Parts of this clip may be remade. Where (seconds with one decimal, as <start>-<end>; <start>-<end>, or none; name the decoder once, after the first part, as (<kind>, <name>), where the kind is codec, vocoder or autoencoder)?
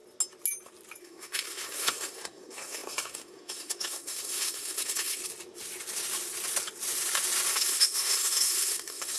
1.0-5.2 (codec, SNAC); 7.5-9.2